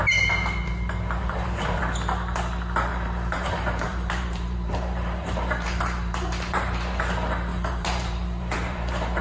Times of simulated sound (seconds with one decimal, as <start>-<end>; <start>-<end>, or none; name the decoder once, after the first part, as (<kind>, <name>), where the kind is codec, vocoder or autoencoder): 1.2-1.8 (vocoder, BigVGAN v2); 2.9-7.0; 7.5-9.2